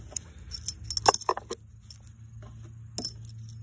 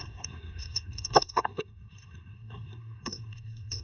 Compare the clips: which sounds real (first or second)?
first